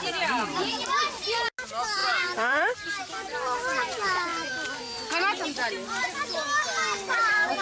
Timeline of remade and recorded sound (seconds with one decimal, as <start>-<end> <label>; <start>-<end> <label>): 0.0-2.0 recorded; 2.0-2.9 remade; 2.9-4.3 recorded; 4.3-4.8 remade; 4.8-7.6 recorded